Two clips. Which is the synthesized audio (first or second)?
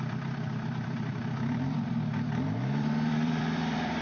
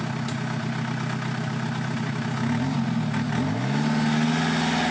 first